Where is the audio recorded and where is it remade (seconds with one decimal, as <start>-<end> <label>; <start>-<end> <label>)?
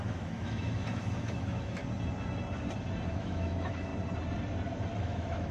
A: 0.0-1.8 remade; 1.8-3.1 recorded; 3.1-3.9 remade; 3.9-5.0 recorded; 5.0-5.5 remade